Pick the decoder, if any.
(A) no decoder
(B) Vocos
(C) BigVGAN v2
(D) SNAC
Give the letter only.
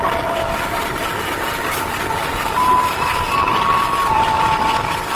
C